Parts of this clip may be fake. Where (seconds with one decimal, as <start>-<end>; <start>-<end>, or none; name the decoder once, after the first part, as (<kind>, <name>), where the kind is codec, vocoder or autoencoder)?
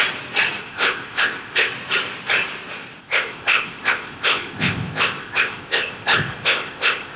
0.6-1.7 (codec, ZipCodec); 3.0-7.2